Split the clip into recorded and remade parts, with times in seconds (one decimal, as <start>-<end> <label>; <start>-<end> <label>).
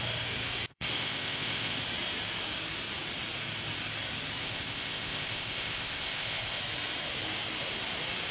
0.0-0.7 recorded; 0.7-1.8 remade; 1.8-4.4 recorded; 4.4-6.6 remade; 6.6-8.3 recorded